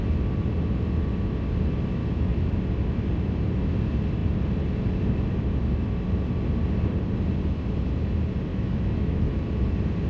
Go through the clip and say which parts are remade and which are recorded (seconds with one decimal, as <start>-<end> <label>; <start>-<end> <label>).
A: 0.0-2.0 recorded; 2.0-2.6 remade; 2.6-8.5 recorded; 8.5-9.3 remade; 9.3-10.1 recorded

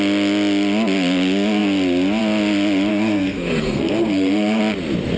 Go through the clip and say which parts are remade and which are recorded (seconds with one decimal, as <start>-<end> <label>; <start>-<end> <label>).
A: 0.0-2.9 recorded; 2.9-4.6 remade; 4.6-5.2 recorded

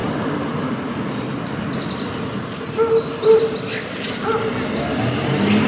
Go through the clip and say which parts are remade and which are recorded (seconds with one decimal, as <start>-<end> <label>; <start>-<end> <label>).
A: 0.0-5.7 recorded

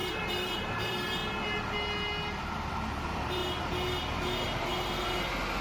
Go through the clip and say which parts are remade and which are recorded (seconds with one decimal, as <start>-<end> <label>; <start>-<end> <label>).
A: 0.0-1.2 remade; 1.2-2.7 recorded; 2.7-3.4 remade; 3.4-5.6 recorded